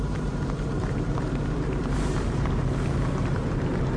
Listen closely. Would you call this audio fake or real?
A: fake